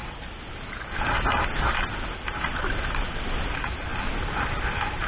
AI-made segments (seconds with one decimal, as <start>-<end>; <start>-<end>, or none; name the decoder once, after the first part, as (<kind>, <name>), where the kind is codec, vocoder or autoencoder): none